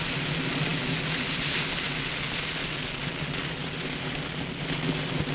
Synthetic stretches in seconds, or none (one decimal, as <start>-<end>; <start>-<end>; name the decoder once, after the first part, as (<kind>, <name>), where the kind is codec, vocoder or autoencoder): none